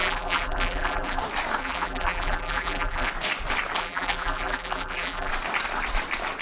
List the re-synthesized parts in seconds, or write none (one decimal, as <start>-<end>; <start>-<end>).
0.0-1.2; 1.6-3.1; 3.8-5.3